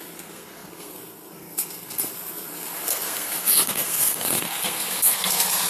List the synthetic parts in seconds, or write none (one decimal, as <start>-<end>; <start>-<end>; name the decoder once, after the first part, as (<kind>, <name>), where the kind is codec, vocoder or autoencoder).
0.0-5.7 (codec, SNAC)

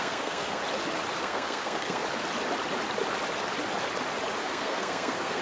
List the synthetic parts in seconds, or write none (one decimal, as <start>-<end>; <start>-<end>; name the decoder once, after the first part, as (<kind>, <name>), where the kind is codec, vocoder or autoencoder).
0.0-0.6 (codec, SNAC); 1.2-2.0; 4.4-5.4

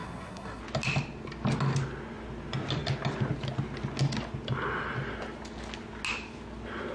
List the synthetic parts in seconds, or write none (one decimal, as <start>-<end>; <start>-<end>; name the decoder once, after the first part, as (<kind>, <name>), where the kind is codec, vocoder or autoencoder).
0.0-0.6 (codec, SNAC)

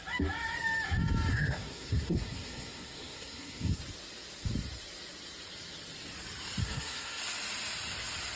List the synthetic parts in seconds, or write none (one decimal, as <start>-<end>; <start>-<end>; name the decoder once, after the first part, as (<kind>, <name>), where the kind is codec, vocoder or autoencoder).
1.3-3.8 (codec, SNAC); 6.6-7.2

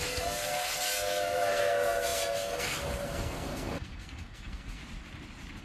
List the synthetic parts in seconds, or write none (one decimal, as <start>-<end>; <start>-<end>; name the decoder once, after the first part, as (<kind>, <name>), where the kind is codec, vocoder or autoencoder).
0.0-4.8 (codec, SNAC)

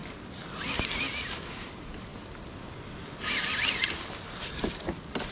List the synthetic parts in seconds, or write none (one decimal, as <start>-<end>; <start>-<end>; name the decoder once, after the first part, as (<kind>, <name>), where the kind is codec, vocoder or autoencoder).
none